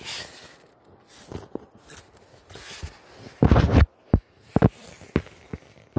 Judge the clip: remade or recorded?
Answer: recorded